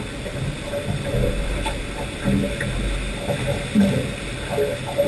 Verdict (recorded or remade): recorded